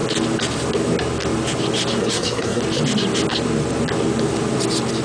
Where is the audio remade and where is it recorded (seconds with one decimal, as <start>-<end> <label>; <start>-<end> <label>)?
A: 0.0-2.0 recorded; 2.0-2.6 remade; 2.6-5.0 recorded